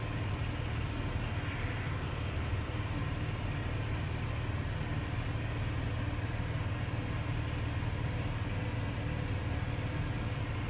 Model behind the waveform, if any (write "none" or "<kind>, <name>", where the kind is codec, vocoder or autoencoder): none